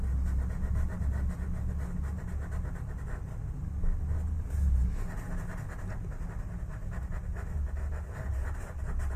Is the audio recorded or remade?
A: recorded